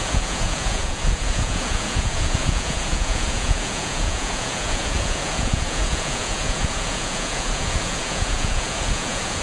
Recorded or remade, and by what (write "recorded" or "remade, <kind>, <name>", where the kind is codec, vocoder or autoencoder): remade, vocoder, Vocos